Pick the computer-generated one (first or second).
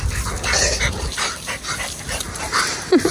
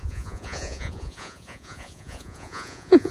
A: second